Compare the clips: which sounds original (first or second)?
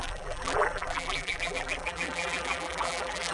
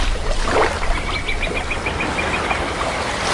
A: second